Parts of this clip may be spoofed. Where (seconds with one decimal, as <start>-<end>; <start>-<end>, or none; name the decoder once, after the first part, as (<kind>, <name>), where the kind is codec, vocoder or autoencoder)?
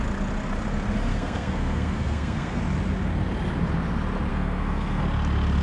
1.1-2.6 (codec, SNAC); 4.3-5.0